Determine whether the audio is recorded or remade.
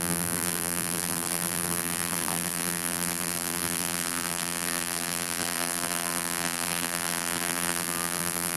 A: remade